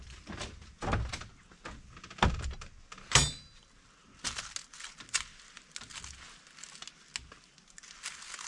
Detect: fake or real real